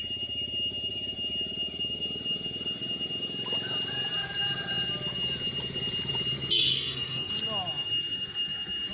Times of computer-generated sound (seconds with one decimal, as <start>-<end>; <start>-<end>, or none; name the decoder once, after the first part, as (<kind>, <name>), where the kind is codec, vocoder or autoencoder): 6.7-7.3 (codec, SNAC)